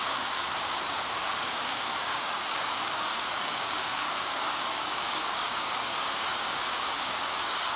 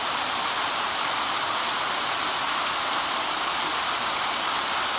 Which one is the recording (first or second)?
second